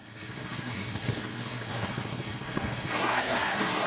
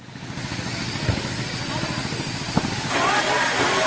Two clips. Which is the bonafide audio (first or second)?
second